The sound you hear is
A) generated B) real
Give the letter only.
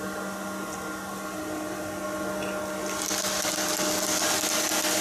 B